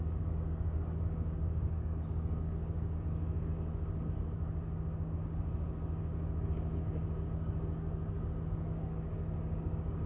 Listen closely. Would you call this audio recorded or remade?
remade